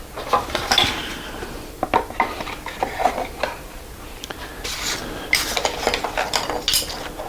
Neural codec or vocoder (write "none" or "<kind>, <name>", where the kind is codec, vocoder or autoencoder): none